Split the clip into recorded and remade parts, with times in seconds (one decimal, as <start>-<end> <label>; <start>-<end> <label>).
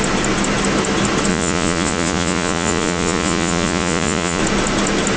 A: 0.0-1.3 recorded; 1.3-4.4 remade; 4.4-5.2 recorded